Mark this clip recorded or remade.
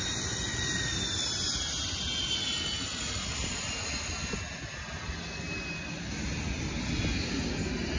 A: recorded